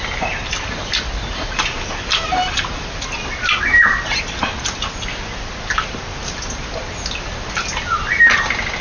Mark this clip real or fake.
real